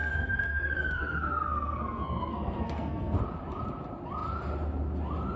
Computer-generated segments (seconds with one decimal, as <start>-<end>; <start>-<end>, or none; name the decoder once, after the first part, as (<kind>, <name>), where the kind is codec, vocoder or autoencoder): 0.0-3.2 (codec, SNAC)